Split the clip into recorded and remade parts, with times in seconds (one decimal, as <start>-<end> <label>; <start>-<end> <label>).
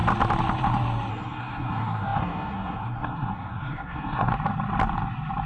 0.0-1.1 recorded; 1.1-4.3 remade; 4.3-5.5 recorded